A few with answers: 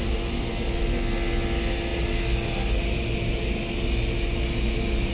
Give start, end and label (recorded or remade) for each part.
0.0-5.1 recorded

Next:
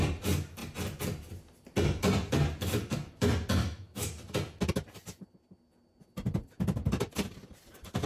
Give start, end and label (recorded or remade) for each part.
0.0-3.6 recorded; 3.6-4.1 remade; 4.1-8.1 recorded

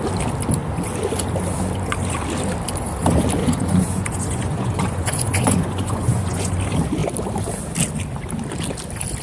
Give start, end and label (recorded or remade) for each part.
0.0-3.4 recorded; 3.4-6.5 remade; 6.5-9.2 recorded